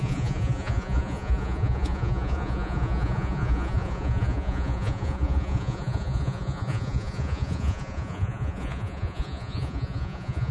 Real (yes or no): no